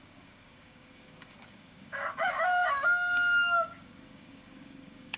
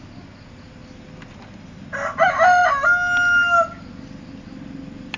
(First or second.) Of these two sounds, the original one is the second